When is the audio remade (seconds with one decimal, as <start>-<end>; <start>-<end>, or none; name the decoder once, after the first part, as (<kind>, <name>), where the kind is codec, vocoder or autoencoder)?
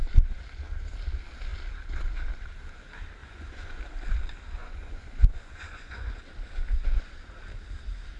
3.2-3.8 (vocoder, Vocos); 4.6-6.2